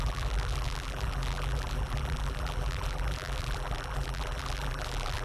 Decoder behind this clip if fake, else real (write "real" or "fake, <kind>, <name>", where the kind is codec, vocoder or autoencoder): fake, vocoder, BigVGAN v2